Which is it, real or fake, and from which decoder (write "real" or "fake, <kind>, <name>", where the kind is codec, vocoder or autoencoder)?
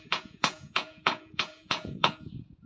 fake, vocoder, Vocos